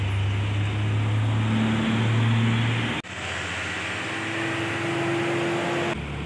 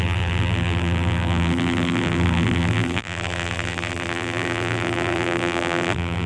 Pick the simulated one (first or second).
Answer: second